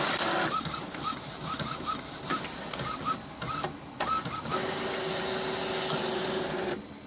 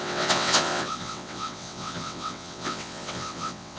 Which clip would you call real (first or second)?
first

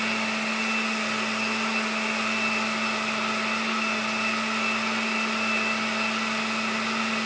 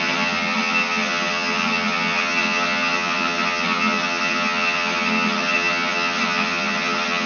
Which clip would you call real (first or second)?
first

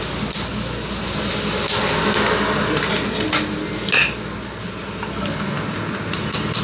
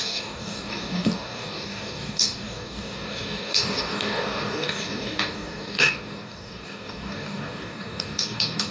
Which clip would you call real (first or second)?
first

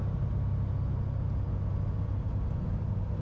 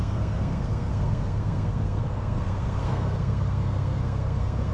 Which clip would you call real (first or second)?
first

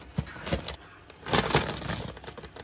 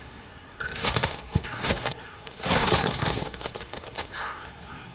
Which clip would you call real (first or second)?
first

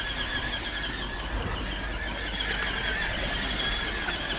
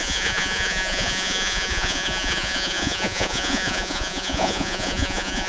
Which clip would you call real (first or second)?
first